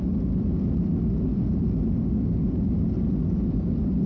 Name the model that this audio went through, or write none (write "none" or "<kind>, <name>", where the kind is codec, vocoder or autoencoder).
none